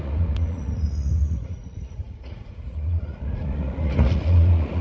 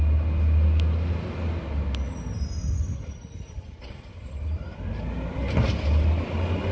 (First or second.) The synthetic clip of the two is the first